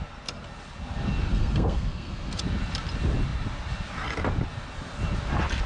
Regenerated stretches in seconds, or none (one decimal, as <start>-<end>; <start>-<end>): 1.3-2.4